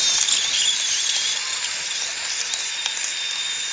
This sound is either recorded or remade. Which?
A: recorded